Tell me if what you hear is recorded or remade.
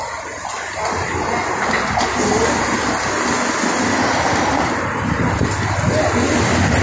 recorded